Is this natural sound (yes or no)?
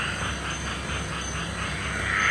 yes